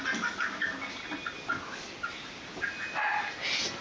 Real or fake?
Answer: real